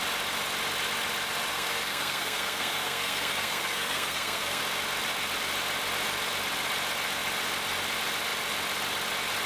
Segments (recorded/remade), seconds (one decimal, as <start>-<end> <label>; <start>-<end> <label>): 0.0-1.5 recorded; 1.5-4.6 remade; 4.6-9.5 recorded